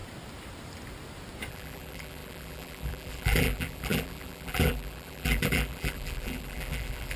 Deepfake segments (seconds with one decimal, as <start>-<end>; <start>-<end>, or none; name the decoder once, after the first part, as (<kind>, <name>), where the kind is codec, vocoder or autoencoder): 1.5-7.2 (vocoder, BigVGAN v2)